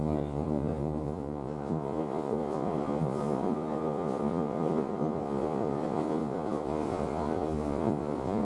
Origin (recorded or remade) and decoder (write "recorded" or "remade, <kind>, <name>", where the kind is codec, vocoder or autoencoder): remade, vocoder, Vocos